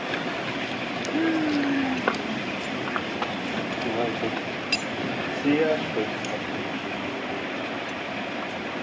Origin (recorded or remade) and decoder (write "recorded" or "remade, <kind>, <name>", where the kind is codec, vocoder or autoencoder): recorded